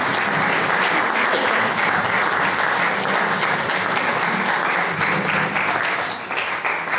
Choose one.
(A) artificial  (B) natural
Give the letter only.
B